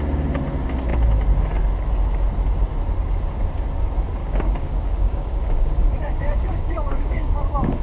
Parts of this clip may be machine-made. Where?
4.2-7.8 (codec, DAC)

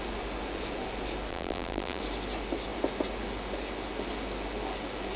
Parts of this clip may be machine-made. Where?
1.3-2.0 (vocoder, BigVGAN v2)